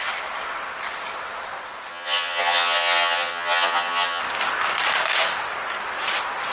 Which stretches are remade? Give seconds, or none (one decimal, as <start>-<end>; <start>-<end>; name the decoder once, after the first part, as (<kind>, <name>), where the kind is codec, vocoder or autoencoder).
1.9-4.2 (vocoder, HiFi-GAN)